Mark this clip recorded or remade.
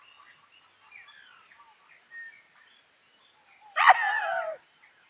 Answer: recorded